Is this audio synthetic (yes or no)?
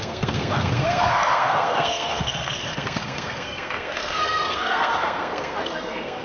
yes